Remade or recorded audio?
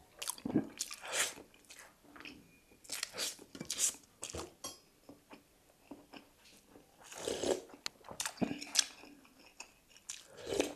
recorded